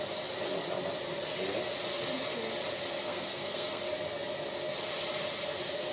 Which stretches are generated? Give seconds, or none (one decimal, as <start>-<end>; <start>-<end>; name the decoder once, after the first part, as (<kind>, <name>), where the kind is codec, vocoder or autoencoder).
3.0-3.8 (codec, SNAC)